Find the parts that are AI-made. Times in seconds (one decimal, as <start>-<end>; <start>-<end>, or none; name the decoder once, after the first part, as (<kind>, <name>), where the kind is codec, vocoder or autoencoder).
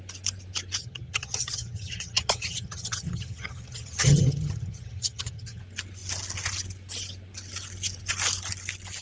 0.8-5.6 (vocoder, HiFi-GAN)